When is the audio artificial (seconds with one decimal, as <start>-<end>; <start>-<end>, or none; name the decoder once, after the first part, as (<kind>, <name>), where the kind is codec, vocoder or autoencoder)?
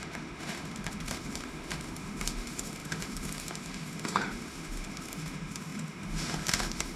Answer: 0.0-7.0 (autoencoder, DAC-VAE)